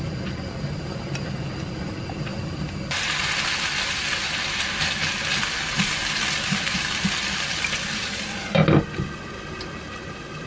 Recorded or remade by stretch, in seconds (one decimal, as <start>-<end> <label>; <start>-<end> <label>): 0.0-10.5 recorded